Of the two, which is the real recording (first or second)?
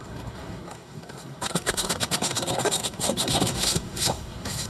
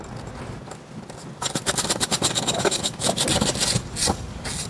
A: second